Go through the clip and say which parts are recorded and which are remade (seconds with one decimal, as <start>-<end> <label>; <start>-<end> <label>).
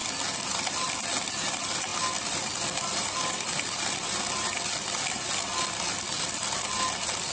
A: 0.0-1.9 recorded; 1.9-4.7 remade; 4.7-7.3 recorded